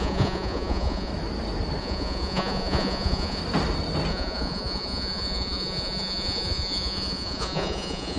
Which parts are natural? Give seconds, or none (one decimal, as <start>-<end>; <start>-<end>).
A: 1.1-1.8; 3.4-4.1